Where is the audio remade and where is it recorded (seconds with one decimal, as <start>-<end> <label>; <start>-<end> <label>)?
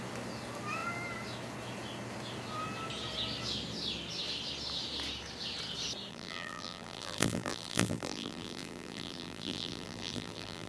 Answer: 0.0-6.1 recorded; 6.1-10.7 remade